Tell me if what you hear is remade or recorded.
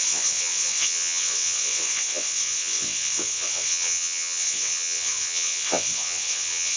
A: remade